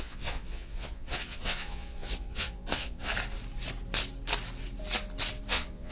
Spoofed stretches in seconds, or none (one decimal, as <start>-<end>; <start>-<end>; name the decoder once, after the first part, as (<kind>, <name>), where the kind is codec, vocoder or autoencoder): 0.0-3.1 (vocoder, Vocos); 5.5-5.9